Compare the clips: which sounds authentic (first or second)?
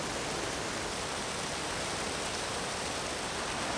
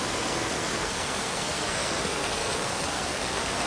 first